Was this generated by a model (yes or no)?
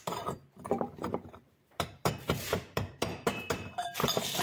yes